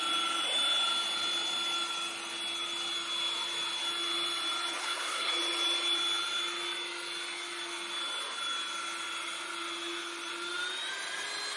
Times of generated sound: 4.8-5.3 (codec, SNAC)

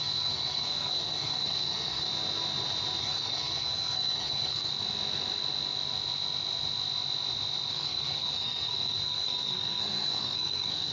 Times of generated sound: 0.0-2.1 (codec, SNAC); 3.0-4.7; 7.7-10.9

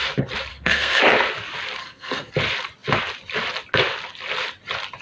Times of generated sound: 0.5-1.0 (codec, SNAC); 1.8-2.3

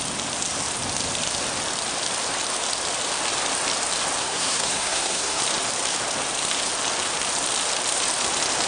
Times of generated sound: 4.2-5.4 (codec, SNAC)

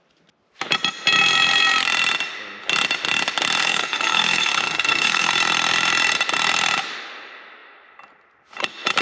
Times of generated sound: 3.6-5.3 (codec, SNAC)